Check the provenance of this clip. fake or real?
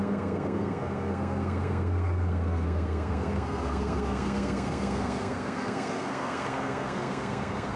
fake